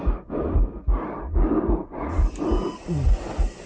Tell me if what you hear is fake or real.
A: real